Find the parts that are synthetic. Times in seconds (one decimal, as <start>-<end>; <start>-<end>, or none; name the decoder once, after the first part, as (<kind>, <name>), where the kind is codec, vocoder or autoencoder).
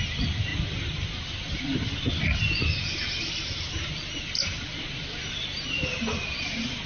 none